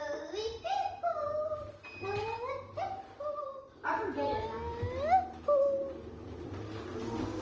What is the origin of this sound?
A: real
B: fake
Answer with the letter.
A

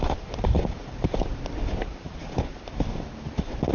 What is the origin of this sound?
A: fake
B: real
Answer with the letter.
B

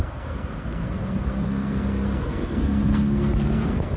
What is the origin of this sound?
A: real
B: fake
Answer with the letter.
B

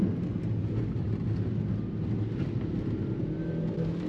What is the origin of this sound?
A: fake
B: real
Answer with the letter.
B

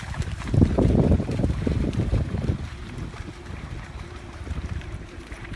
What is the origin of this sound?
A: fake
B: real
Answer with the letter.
A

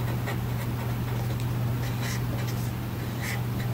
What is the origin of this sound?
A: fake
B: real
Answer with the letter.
B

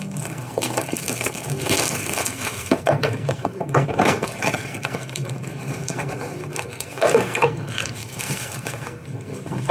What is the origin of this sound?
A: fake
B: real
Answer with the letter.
A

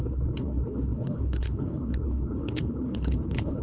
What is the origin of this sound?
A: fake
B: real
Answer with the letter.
A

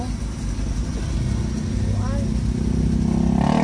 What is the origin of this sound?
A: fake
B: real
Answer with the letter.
B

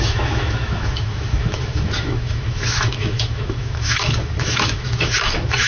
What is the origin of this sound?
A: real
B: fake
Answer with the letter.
B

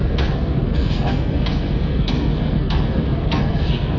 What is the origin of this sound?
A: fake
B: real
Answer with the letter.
A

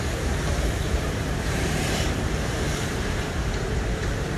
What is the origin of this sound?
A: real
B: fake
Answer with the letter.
B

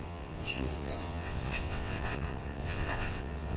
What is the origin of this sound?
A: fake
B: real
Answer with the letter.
A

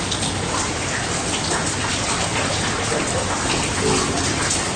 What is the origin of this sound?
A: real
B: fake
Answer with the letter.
A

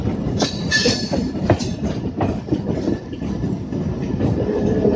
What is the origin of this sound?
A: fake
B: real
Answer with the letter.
B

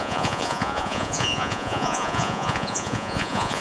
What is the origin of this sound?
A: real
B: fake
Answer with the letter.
B